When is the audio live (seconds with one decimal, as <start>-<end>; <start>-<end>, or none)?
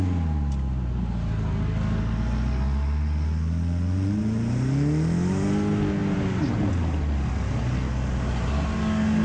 0.0-9.2